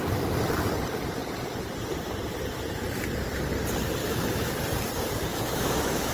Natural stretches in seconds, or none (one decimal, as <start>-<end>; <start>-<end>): 0.0-4.0; 4.5-5.3